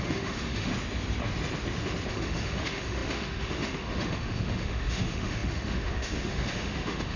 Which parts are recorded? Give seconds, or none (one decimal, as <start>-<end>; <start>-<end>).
0.7-2.1